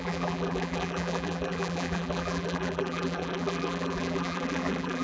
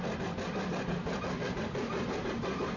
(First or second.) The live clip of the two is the second